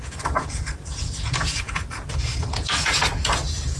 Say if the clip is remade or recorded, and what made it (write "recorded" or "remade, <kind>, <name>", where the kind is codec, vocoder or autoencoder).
remade, vocoder, Vocos